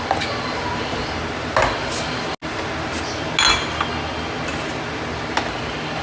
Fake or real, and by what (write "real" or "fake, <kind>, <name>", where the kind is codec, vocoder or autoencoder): real